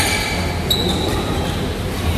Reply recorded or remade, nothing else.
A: recorded